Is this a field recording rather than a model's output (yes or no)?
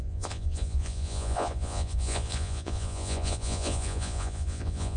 no